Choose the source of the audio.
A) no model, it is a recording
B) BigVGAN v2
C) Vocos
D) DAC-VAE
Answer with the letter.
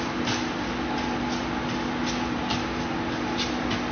A